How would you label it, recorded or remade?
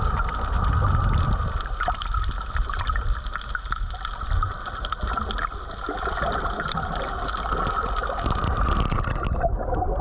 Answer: recorded